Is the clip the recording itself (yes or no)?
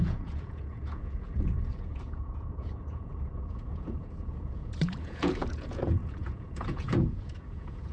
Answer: no